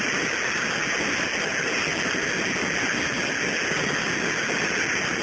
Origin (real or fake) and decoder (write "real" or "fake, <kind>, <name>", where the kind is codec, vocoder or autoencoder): real